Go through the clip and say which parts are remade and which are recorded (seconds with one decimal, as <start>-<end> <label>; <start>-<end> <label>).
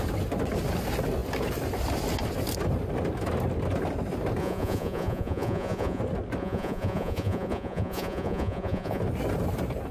0.0-4.4 recorded; 4.4-6.0 remade; 6.0-6.4 recorded; 6.4-9.0 remade; 9.0-9.9 recorded